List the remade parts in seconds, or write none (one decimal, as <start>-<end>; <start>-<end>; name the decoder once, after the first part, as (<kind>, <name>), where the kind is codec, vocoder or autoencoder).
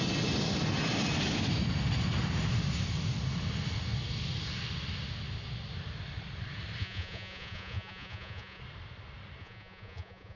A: 6.8-8.6 (vocoder, Vocos); 9.4-10.4